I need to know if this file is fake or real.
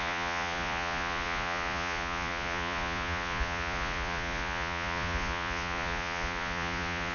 fake